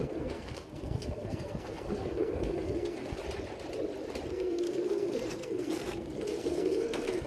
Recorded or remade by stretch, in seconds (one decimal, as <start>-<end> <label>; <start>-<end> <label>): 0.0-3.2 remade; 3.2-4.3 recorded; 4.3-7.3 remade